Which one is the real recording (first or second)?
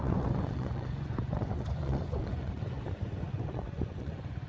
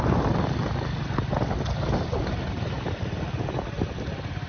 second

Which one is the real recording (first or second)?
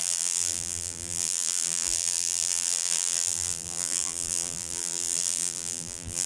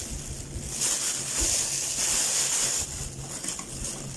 second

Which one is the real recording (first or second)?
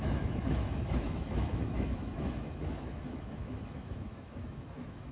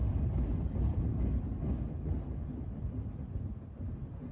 second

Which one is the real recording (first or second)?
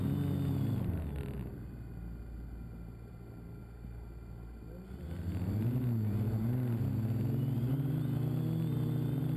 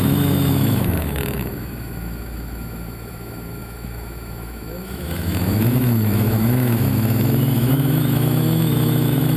first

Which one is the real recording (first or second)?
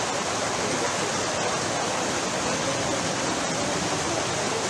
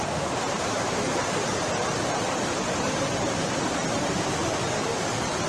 first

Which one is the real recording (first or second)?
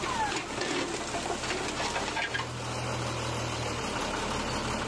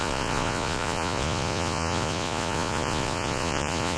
first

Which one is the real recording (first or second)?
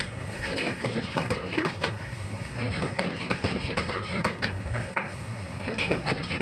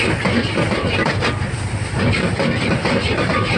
second